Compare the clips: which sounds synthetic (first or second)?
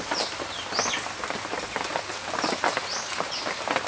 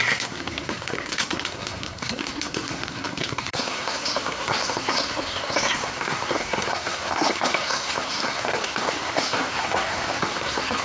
second